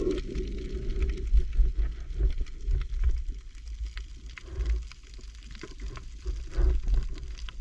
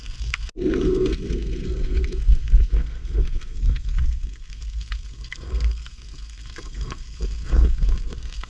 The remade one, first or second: second